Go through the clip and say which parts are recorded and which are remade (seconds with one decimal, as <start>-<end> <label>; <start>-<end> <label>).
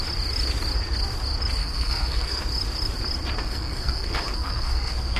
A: 0.0-1.6 recorded; 1.6-2.4 remade; 2.4-3.4 recorded; 3.4-5.2 remade